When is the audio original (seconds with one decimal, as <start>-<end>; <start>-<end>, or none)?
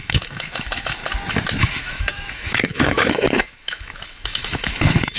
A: 1.0-1.6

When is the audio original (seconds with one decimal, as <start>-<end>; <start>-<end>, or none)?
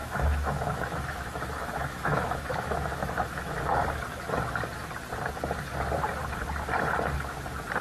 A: 3.6-7.8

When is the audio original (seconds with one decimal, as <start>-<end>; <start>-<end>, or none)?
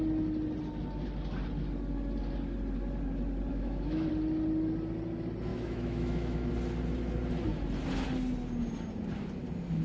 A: 0.0-3.5; 4.1-5.5; 6.5-9.8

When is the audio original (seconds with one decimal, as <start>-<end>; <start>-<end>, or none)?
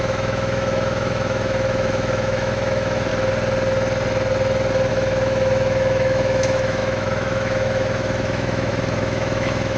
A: 3.1-4.9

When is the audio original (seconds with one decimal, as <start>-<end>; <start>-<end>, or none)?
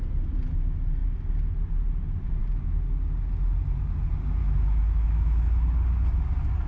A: 0.0-4.4; 5.4-6.7